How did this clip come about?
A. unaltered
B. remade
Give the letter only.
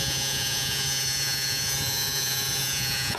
B